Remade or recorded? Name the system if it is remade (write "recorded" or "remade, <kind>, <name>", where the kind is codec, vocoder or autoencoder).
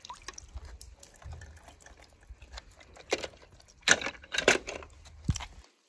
remade, vocoder, BigVGAN v2